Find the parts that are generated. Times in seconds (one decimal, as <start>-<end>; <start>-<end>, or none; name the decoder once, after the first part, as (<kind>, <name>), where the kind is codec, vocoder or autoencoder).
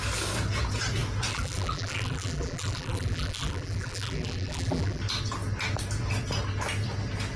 1.3-5.0 (vocoder, BigVGAN v2)